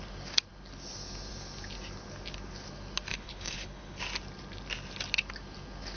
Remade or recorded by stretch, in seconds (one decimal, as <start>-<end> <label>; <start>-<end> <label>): 0.0-3.1 recorded; 3.1-4.0 remade; 4.0-6.0 recorded